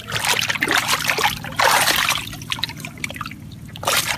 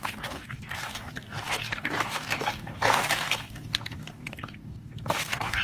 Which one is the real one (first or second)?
first